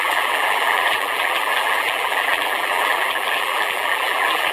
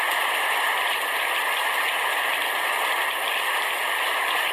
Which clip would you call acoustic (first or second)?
second